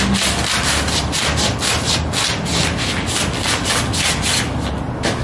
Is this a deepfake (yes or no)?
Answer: no